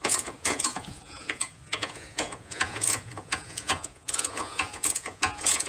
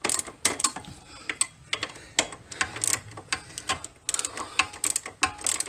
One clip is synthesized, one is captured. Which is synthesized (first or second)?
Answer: first